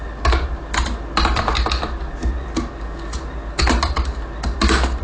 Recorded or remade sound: recorded